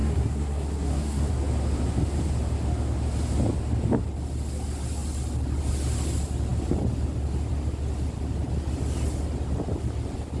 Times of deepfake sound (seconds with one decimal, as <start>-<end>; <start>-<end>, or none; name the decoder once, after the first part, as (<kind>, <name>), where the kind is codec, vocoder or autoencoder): 0.0-1.3 (codec, SNAC)